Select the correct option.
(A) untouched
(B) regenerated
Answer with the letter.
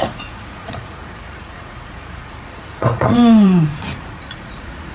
B